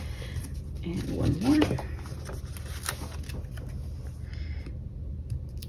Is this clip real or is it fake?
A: real